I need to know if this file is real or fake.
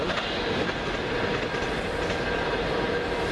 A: real